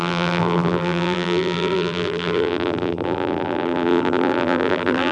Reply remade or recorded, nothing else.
remade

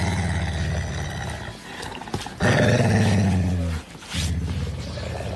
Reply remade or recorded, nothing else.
recorded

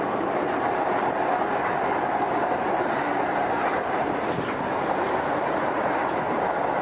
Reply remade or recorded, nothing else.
remade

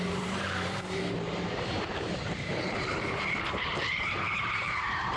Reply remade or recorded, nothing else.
remade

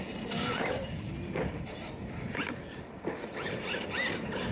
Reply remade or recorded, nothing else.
recorded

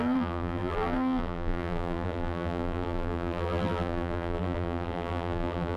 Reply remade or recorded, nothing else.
remade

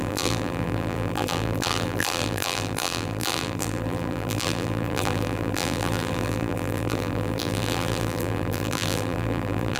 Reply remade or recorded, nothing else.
remade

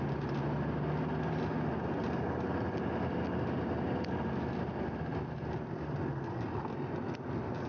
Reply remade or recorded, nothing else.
recorded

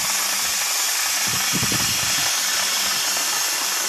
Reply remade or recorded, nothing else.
recorded